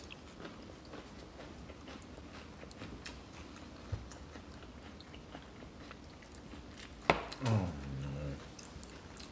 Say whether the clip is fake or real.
real